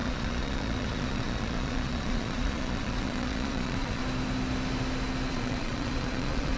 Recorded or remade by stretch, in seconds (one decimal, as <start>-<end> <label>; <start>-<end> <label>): 0.0-4.0 remade; 4.0-5.3 recorded; 5.3-6.6 remade